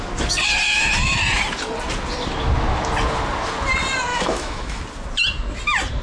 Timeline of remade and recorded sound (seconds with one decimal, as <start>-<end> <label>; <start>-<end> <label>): 0.0-4.1 recorded; 4.1-4.8 remade; 4.8-6.0 recorded